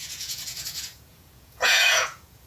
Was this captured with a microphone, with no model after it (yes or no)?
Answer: no